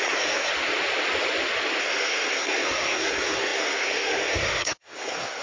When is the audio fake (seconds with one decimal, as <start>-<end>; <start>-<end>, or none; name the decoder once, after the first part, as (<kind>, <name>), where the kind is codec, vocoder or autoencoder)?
0.0-0.5 (codec, SNAC); 1.8-5.4